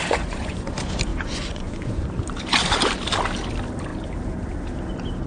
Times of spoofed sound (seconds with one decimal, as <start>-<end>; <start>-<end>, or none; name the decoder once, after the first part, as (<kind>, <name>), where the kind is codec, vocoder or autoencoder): 0.0-0.7 (vocoder, Vocos); 1.1-2.0